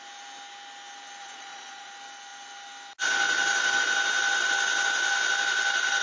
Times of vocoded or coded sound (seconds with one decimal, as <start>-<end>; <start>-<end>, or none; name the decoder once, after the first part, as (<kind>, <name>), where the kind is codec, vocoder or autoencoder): 1.2-1.9 (vocoder, Vocos)